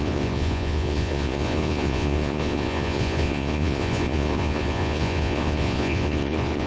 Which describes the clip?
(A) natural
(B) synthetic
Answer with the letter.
B